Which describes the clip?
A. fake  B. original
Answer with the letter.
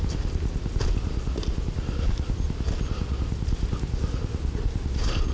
B